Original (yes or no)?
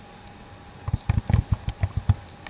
yes